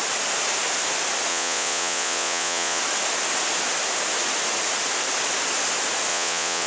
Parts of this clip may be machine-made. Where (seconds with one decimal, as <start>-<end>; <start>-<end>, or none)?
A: 1.3-2.8; 6.1-6.7